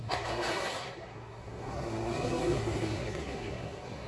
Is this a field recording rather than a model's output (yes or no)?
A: no